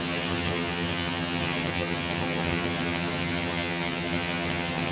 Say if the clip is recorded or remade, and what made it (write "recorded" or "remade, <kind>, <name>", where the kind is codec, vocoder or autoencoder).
remade, vocoder, HiFi-GAN